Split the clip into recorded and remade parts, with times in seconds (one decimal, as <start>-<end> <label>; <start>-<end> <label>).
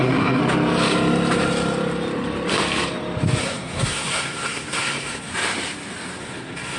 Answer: 0.0-0.4 remade; 0.4-3.4 recorded; 3.4-5.3 remade; 5.3-6.2 recorded; 6.2-6.8 remade